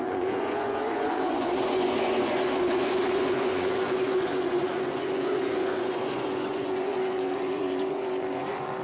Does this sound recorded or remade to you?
remade